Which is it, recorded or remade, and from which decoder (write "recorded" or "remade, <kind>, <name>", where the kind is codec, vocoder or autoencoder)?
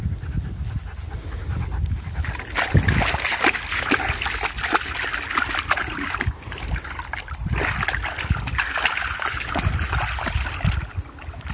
recorded